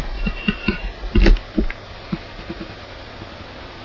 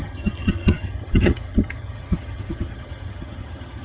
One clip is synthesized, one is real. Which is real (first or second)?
first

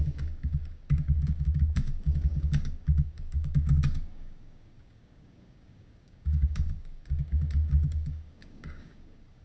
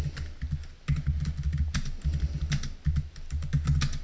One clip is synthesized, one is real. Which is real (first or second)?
second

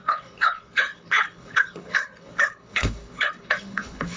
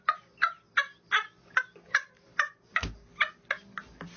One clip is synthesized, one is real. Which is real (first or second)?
second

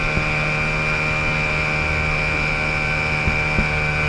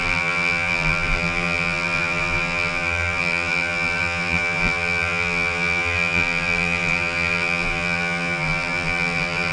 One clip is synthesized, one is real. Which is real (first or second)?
first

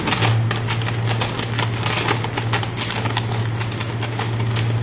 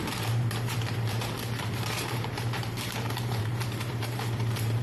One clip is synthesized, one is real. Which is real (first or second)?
first